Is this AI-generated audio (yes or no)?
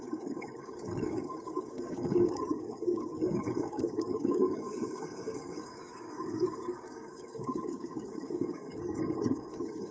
yes